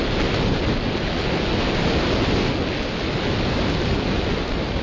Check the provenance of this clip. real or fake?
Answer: real